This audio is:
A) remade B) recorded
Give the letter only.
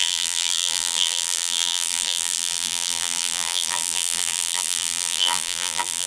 A